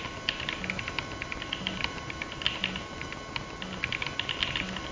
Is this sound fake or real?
real